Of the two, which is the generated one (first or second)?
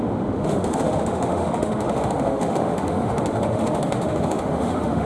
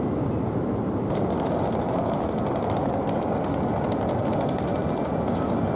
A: first